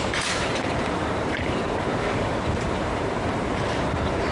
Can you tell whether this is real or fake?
fake